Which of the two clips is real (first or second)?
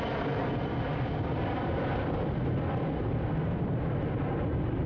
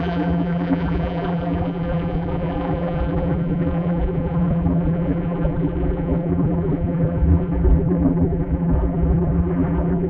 first